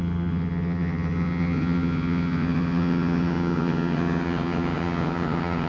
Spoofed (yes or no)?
yes